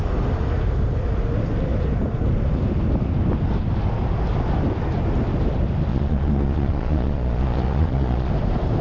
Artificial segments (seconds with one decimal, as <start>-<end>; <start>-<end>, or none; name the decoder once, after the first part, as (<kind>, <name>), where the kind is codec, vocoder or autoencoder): 5.9-8.3 (vocoder, Vocos)